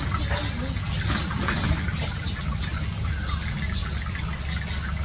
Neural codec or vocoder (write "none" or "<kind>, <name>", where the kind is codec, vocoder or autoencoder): none